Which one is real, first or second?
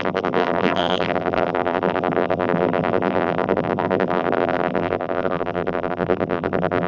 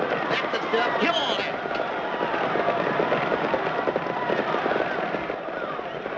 second